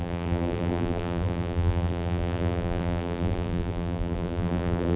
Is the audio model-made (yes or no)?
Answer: yes